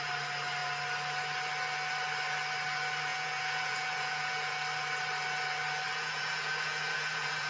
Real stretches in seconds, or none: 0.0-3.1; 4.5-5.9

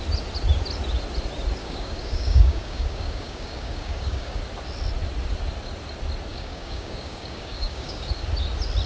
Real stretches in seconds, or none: 0.0-1.6; 4.4-6.3; 8.1-8.9

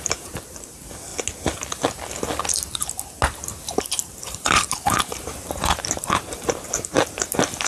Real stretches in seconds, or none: 1.1-3.8

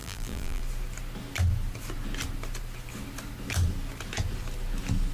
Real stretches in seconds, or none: 0.6-5.1

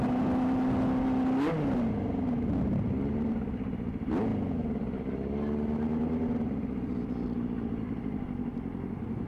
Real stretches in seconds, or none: 0.0-9.3

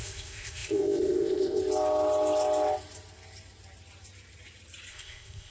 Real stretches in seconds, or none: 1.6-4.9

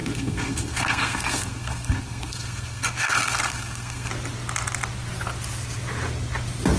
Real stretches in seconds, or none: 4.1-6.8

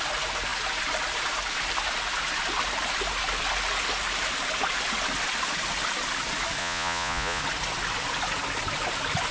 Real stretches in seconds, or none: 0.0-6.6; 7.4-9.3